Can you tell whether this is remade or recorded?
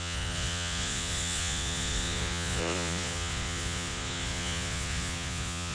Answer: remade